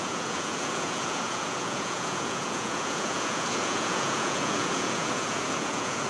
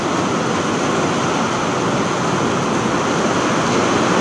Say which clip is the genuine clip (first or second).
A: second